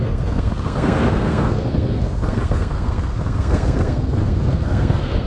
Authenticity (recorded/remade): remade